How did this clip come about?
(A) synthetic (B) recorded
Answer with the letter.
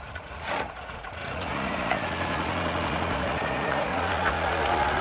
A